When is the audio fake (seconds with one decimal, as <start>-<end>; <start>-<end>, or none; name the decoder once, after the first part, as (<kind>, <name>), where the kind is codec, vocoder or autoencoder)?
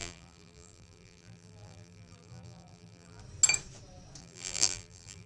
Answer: 0.0-3.2 (vocoder, BigVGAN v2); 4.2-5.3